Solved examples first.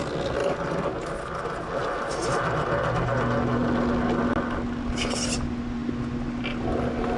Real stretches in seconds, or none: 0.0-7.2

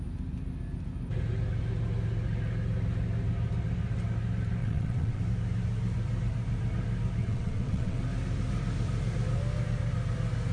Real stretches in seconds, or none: 0.0-4.6; 5.2-7.2; 8.0-10.5

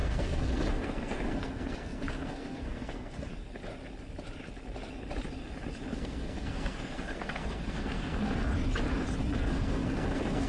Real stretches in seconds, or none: 3.3-5.9; 8.5-9.4

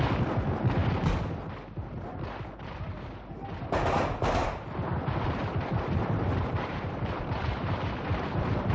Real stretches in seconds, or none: 0.0-4.4